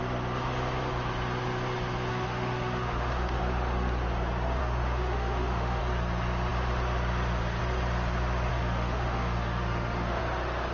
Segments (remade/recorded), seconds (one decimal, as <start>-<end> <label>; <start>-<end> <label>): 0.0-2.1 recorded; 2.1-3.4 remade; 3.4-4.6 recorded; 4.6-5.8 remade; 5.8-8.5 recorded; 8.5-10.2 remade; 10.2-10.7 recorded